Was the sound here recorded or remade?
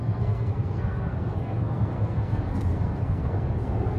remade